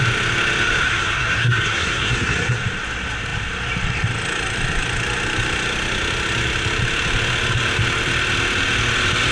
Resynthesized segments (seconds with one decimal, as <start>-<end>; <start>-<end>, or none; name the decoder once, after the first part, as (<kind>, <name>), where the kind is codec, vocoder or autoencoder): 0.9-2.6 (codec, SNAC)